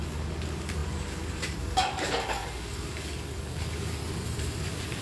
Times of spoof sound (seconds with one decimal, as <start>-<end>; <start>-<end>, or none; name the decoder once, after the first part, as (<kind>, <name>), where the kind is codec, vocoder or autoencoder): 0.0-4.0 (codec, DAC); 4.6-5.0